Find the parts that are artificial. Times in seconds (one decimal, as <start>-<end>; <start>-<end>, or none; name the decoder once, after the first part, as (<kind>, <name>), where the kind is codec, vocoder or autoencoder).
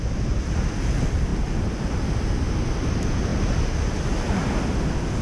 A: none